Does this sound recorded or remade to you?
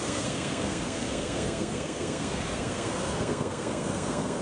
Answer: remade